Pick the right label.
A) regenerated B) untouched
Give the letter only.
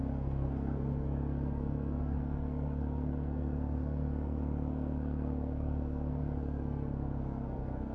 A